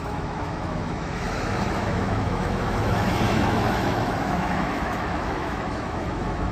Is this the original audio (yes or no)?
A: no